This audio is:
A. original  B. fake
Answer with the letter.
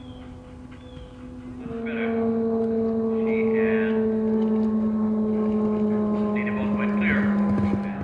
A